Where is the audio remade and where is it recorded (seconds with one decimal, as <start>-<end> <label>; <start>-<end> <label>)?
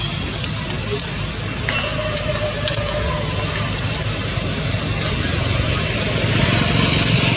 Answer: 0.0-7.4 recorded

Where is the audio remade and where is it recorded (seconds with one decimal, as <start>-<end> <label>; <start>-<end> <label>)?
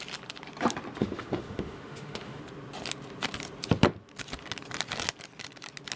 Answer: 0.0-1.0 recorded; 1.0-2.4 remade; 2.4-6.0 recorded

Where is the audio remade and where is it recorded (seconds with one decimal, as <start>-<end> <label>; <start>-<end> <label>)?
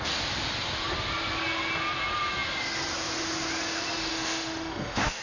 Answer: 0.0-4.1 recorded; 4.1-5.2 remade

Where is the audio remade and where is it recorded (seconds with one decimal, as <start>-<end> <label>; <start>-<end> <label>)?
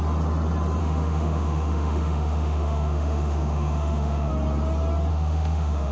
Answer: 0.0-0.8 recorded; 0.8-4.3 remade; 4.3-5.1 recorded; 5.1-5.9 remade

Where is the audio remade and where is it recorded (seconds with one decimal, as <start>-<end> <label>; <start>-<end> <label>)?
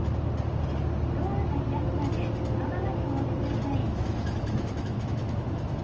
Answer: 0.0-3.8 recorded; 3.8-5.8 remade